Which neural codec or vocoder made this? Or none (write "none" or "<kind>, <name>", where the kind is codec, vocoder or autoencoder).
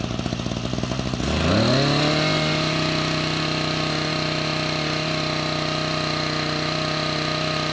none